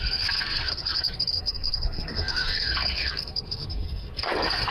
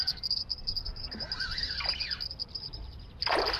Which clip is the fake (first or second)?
first